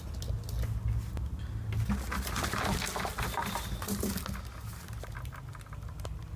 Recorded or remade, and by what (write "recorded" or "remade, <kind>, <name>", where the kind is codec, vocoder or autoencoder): recorded